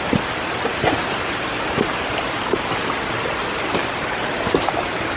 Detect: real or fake real